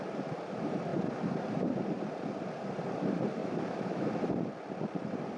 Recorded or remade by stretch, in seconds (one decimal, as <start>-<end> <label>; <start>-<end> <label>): 0.0-3.4 recorded; 3.4-4.2 remade; 4.2-5.4 recorded